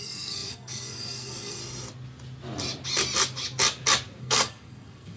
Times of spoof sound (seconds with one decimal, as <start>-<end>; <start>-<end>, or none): 0.0-1.6; 4.2-5.2